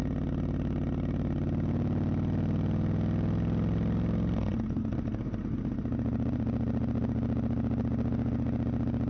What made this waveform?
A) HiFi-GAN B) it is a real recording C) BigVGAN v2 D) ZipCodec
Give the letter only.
B